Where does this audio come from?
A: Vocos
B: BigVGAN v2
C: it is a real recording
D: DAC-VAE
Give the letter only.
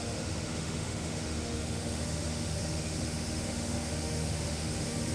D